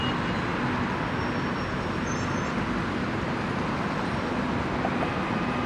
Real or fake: real